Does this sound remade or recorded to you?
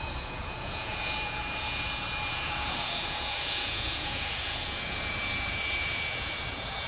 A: remade